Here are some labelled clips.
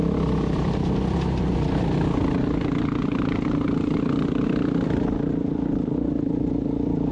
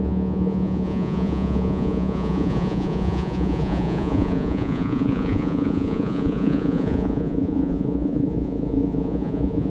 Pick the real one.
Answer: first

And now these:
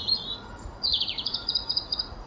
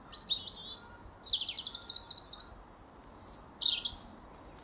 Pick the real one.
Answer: second